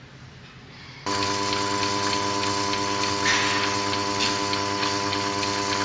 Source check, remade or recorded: recorded